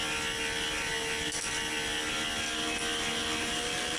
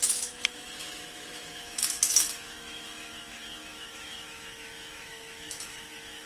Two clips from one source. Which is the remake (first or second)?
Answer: second